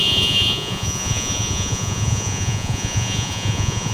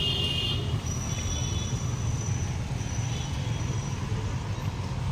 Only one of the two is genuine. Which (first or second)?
second